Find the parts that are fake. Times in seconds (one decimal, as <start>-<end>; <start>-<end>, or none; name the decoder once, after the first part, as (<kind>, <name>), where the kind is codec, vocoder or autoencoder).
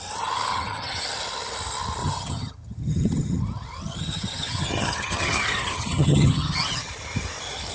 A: 0.5-1.0 (vocoder, HiFi-GAN); 2.0-3.4; 3.8-6.9